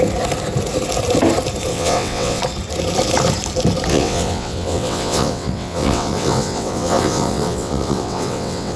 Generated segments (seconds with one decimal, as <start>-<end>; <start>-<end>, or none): 1.7-2.4; 3.9-8.8